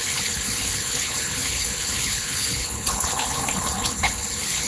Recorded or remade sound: remade